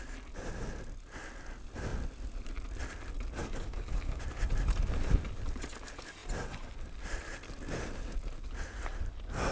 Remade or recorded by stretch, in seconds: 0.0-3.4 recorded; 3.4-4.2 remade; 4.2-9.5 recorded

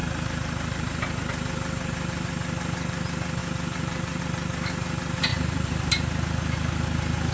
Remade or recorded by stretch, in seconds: 0.0-1.2 remade; 1.2-3.4 recorded; 3.4-4.2 remade; 4.2-5.3 recorded; 5.3-5.9 remade; 5.9-7.3 recorded

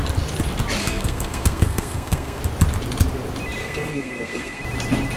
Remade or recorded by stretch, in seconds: 0.0-0.8 recorded; 0.8-2.4 remade; 2.4-3.6 recorded; 3.6-4.6 remade; 4.6-5.2 recorded